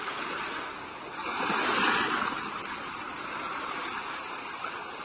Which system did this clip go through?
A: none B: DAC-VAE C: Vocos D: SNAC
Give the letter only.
A